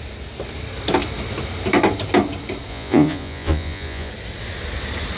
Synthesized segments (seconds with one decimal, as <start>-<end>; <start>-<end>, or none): 2.7-4.1